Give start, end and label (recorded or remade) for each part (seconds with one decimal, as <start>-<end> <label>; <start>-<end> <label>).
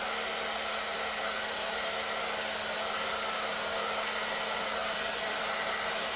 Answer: 0.0-6.2 recorded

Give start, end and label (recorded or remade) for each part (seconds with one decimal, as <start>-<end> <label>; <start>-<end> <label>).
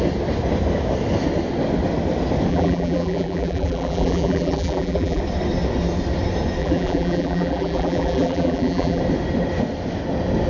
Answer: 0.0-2.5 recorded; 2.5-5.2 remade; 5.2-6.6 recorded; 6.6-9.0 remade; 9.0-10.5 recorded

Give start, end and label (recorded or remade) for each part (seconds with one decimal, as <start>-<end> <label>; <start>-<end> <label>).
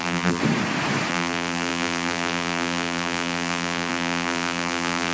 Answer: 0.0-0.4 remade; 0.4-1.1 recorded; 1.1-5.1 remade